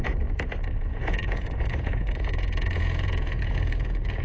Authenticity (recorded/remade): remade